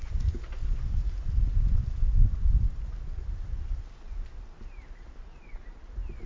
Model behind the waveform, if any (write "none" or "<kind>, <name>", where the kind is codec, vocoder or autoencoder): none